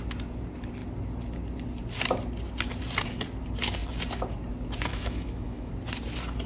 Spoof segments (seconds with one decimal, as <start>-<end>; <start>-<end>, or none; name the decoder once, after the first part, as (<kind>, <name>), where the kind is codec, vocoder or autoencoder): 4.9-5.7 (autoencoder, DAC-VAE)